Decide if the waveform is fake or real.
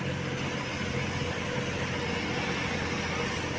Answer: real